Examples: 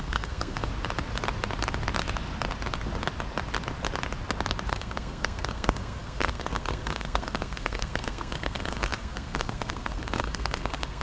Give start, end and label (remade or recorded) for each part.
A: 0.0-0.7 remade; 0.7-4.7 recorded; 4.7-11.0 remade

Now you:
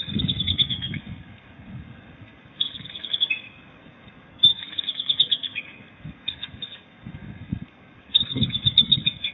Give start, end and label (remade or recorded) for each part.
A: 0.0-9.3 remade

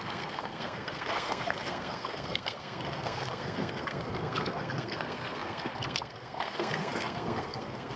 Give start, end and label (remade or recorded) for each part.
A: 0.0-8.0 remade